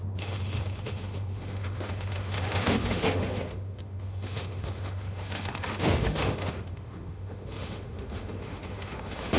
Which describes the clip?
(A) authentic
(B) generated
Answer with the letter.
B